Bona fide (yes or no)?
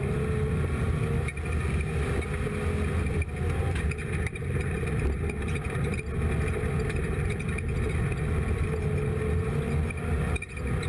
yes